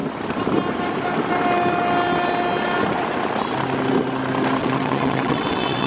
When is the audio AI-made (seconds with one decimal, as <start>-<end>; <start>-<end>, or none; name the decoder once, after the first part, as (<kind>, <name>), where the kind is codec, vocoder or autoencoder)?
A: 4.6-5.9 (vocoder, WaveNeXt)

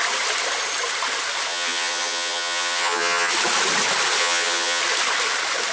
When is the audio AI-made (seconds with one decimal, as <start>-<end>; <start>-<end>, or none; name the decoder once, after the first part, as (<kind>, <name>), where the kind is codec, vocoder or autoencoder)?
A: 1.5-3.3 (vocoder, HiFi-GAN); 4.2-4.8